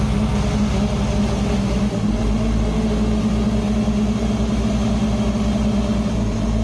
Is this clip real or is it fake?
real